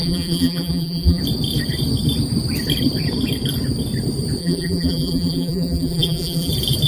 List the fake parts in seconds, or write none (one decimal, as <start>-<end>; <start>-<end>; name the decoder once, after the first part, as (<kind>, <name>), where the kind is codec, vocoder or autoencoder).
0.0-1.2 (vocoder, BigVGAN v2); 4.4-6.5